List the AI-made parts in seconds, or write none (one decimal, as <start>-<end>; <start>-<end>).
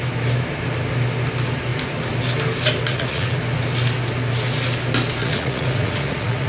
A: 2.9-3.4; 5.2-6.5